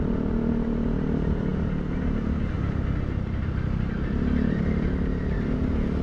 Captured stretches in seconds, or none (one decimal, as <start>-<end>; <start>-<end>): 0.0-6.0